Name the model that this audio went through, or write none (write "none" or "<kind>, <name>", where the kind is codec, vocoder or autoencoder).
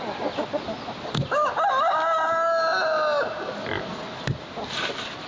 none